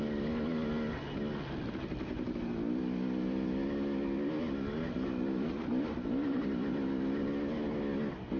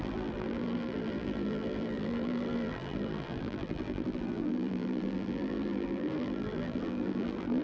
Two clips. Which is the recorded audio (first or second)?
first